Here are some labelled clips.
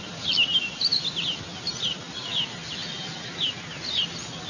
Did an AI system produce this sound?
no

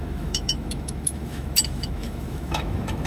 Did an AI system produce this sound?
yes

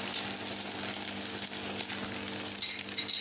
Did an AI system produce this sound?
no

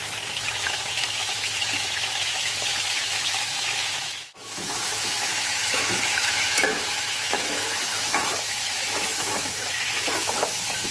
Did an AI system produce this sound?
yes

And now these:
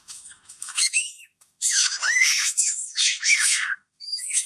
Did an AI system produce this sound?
yes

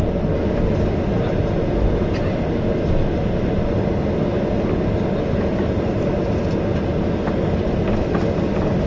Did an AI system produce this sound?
no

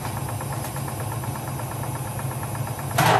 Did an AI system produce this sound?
no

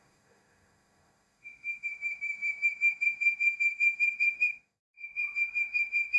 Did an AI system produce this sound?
yes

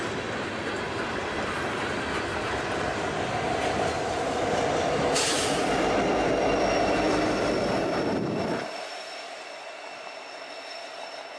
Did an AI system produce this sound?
no